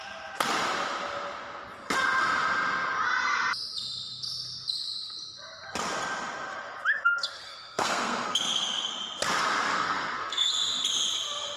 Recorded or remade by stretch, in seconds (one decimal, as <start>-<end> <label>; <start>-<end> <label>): 0.0-7.3 recorded; 7.3-8.9 remade; 8.9-9.7 recorded; 9.7-10.5 remade; 10.5-11.6 recorded